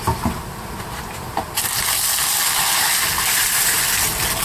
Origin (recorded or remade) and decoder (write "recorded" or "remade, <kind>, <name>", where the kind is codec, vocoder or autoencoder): recorded